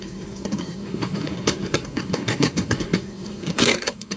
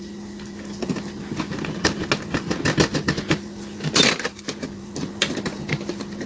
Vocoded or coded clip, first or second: first